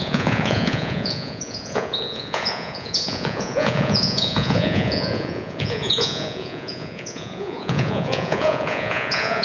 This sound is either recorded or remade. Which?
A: remade